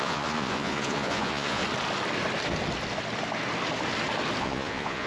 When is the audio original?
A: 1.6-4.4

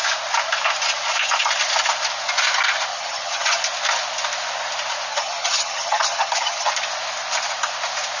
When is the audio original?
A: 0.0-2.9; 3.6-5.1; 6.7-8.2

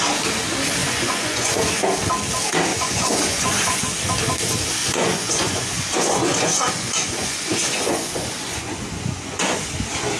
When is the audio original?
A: 0.0-0.8; 1.7-2.7; 3.8-4.8; 9.7-10.2

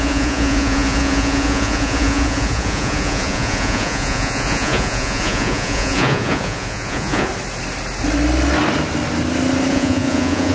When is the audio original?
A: 7.3-9.7

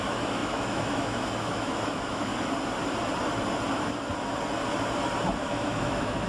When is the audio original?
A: 2.3-5.4

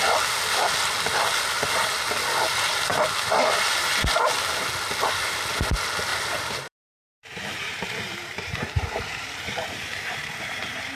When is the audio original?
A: 0.0-6.1